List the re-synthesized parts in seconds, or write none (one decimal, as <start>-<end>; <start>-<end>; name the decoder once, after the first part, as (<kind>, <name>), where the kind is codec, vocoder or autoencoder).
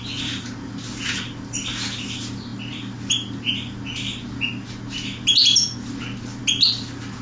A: none